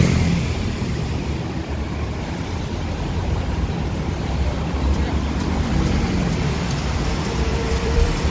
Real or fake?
fake